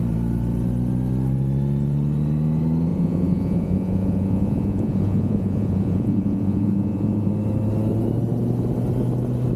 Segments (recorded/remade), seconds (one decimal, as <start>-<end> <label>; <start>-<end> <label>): 0.0-2.9 recorded; 2.9-7.3 remade; 7.3-9.6 recorded